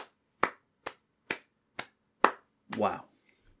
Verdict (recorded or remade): recorded